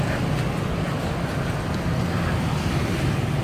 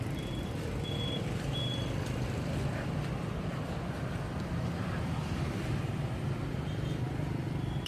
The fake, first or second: second